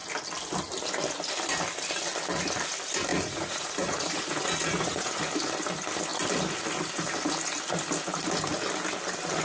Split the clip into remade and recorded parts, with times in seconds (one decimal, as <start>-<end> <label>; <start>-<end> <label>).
0.0-3.1 recorded; 3.1-5.1 remade; 5.1-9.4 recorded